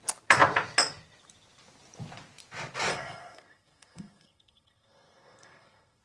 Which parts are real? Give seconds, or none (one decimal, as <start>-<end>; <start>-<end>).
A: 0.0-2.9